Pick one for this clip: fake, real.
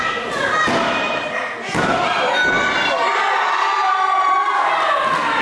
real